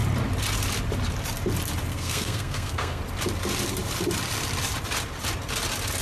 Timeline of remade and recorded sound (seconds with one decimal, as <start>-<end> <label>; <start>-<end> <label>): 0.0-1.9 recorded; 1.9-3.0 remade; 3.0-6.0 recorded